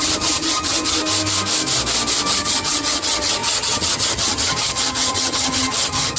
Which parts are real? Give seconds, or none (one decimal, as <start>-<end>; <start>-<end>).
1.0-2.3

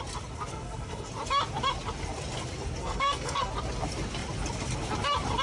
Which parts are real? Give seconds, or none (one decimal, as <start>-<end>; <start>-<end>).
0.0-0.5; 1.1-2.8; 3.5-5.4

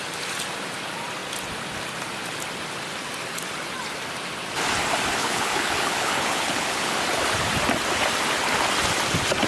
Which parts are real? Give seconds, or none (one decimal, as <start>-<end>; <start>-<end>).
0.0-5.2; 6.9-9.5

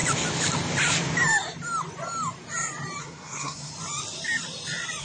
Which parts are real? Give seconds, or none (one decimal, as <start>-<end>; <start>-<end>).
0.0-3.0; 3.7-5.0

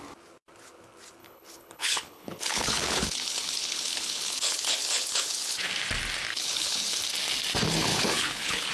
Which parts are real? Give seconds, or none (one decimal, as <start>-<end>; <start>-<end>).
0.0-1.2; 5.7-6.3; 7.0-7.9